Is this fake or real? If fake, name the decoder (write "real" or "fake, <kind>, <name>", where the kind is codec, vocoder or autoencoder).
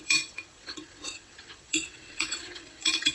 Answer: fake, vocoder, WaveNeXt